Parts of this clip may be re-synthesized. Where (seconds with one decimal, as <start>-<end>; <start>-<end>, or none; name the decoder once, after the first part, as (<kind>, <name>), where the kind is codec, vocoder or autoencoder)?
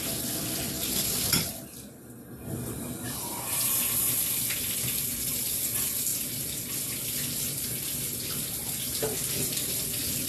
none